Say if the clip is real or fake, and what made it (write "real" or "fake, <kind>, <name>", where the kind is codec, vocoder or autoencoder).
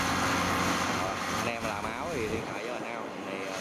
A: real